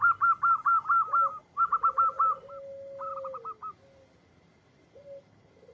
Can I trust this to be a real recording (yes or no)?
yes